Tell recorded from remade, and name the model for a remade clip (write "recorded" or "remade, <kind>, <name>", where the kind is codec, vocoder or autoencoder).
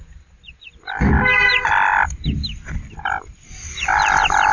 recorded